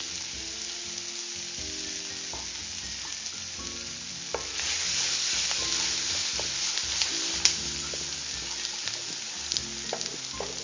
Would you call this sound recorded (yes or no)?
yes